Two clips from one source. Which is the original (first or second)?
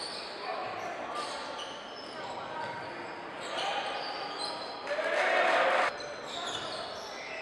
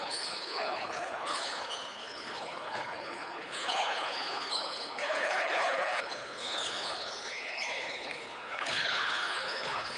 first